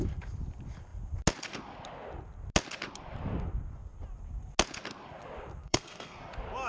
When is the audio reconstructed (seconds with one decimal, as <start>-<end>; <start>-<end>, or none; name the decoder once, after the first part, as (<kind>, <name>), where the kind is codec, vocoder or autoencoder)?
5.6-6.2 (codec, SNAC)